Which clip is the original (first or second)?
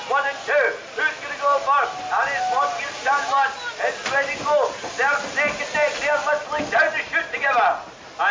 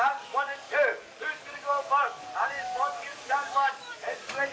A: first